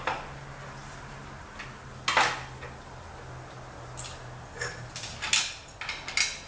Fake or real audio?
real